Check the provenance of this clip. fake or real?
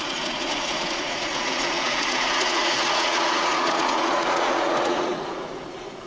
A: fake